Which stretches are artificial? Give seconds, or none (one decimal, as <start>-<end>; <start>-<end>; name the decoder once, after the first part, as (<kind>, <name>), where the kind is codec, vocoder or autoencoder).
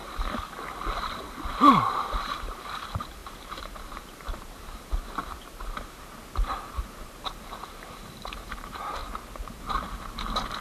1.9-9.0 (vocoder, BigVGAN v2); 9.6-10.6